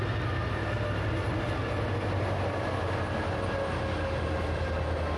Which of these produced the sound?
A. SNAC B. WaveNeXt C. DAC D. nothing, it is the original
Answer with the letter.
D